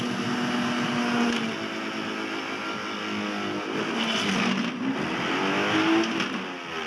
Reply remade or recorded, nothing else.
recorded